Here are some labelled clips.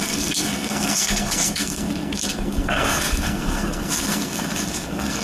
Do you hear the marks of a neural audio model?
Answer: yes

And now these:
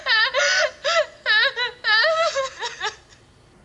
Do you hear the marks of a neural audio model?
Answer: no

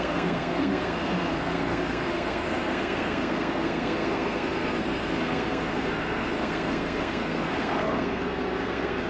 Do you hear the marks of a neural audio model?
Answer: yes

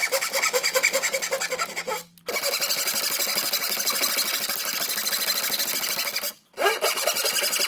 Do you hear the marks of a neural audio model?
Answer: no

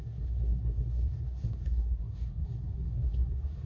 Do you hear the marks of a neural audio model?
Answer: yes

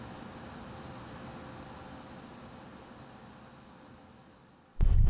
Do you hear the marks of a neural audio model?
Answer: no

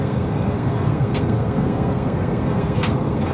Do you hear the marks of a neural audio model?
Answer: yes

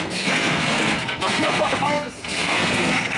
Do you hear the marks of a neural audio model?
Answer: yes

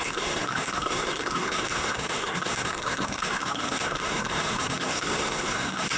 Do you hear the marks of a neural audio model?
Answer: yes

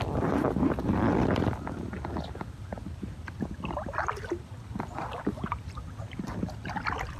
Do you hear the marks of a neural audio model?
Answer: no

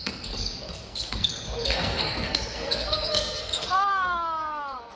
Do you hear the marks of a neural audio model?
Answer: yes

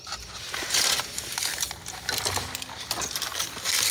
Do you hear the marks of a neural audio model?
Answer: no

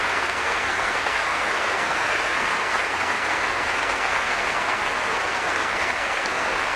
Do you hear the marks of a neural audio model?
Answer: yes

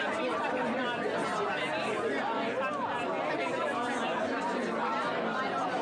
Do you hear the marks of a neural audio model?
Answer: no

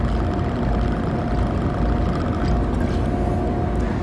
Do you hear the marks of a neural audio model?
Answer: no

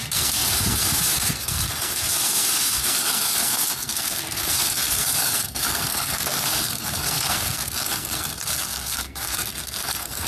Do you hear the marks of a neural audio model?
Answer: yes